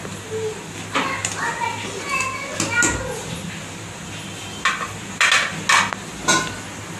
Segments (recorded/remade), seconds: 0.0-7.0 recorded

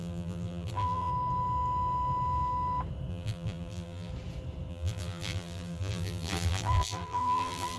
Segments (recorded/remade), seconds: 0.0-1.1 remade; 1.1-3.1 recorded; 3.1-4.1 remade; 4.1-4.7 recorded; 4.7-7.8 remade

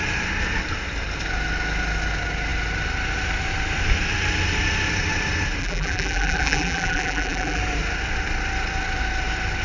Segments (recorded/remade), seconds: 0.0-5.6 recorded; 5.6-7.6 remade; 7.6-9.6 recorded

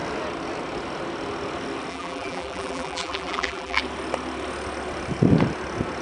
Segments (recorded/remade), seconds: 0.0-1.9 recorded; 1.9-3.8 remade; 3.8-6.0 recorded

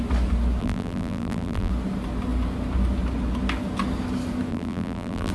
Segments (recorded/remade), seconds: 0.0-0.6 recorded; 0.6-1.7 remade; 1.7-4.5 recorded; 4.5-5.3 remade

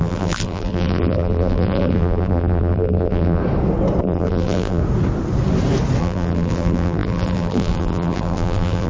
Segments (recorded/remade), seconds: 0.0-3.4 remade; 3.4-4.0 recorded; 4.0-4.8 remade; 4.8-6.0 recorded; 6.0-8.9 remade